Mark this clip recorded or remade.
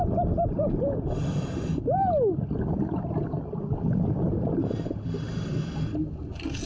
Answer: recorded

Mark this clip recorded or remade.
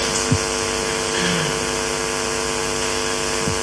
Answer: recorded